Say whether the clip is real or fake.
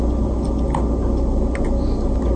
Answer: real